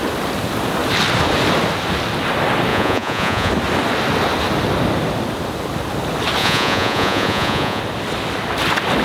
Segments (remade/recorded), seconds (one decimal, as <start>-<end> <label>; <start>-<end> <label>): 0.0-2.7 recorded; 2.7-3.5 remade; 3.5-6.4 recorded; 6.4-7.8 remade; 7.8-9.0 recorded